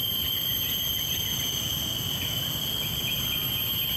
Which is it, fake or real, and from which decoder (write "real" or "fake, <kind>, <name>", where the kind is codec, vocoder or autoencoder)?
real